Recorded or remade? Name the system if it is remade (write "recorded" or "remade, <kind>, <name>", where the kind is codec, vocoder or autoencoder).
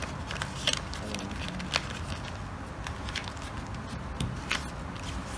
recorded